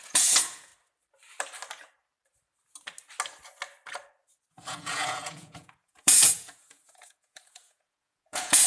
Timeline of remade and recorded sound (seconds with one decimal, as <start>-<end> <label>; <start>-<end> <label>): 0.0-0.7 remade; 0.7-4.5 recorded; 4.5-8.7 remade